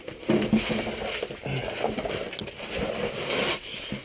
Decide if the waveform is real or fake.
real